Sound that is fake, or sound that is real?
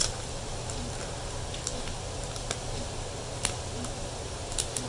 real